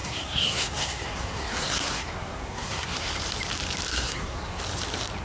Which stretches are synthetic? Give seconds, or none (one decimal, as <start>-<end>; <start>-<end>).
0.0-3.1; 3.9-4.6

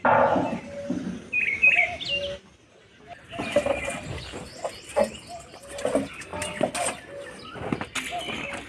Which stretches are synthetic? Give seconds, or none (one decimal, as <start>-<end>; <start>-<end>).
none

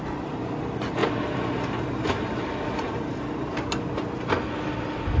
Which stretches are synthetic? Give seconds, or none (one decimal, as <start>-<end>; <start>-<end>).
none